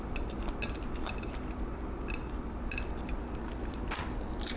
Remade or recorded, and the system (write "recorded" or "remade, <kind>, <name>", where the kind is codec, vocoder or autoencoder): recorded